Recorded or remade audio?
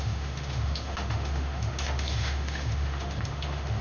remade